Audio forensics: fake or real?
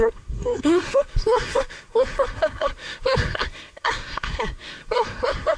fake